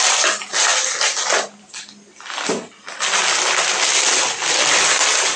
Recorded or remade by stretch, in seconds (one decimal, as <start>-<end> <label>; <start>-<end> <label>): 0.0-5.4 recorded